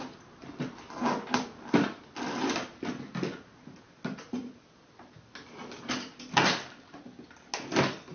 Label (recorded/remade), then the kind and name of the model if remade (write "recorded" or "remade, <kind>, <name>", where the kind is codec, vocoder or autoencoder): recorded